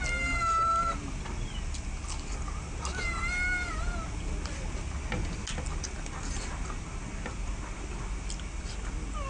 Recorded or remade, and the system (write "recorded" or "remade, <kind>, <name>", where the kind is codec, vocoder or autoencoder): recorded